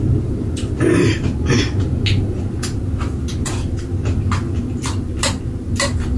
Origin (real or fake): real